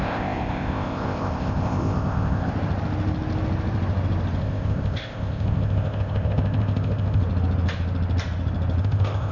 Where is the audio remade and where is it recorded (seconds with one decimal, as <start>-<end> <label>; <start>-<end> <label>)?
0.0-2.5 remade; 2.5-4.4 recorded; 4.4-7.2 remade; 7.2-8.8 recorded; 8.8-9.3 remade